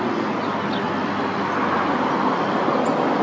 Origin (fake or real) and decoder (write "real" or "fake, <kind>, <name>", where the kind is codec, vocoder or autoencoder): real